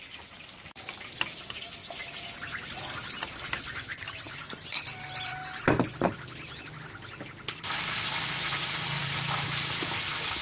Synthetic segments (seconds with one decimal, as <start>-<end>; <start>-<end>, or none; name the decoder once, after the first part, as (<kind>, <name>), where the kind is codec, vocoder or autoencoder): 1.8-6.6 (vocoder, BigVGAN v2)